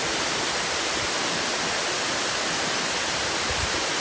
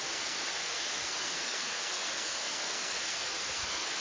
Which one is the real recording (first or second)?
first